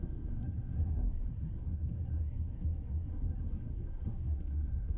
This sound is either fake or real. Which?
fake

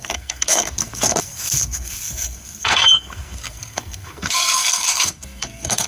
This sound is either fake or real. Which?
fake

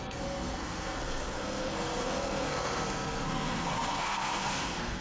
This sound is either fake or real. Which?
fake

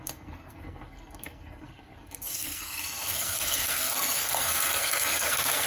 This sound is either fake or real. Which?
fake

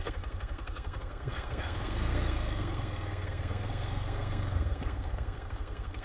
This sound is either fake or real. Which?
fake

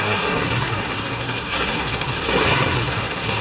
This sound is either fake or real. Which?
fake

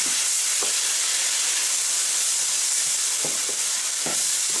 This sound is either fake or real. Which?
real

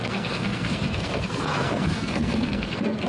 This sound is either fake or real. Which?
fake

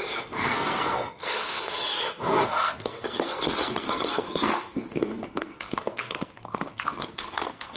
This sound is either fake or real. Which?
fake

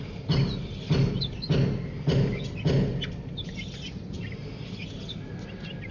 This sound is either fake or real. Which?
real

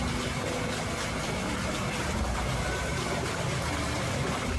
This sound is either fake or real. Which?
real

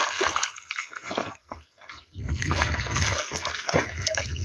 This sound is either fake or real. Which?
fake